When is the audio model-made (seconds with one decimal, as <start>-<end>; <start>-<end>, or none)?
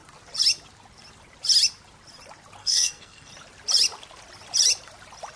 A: 2.6-3.3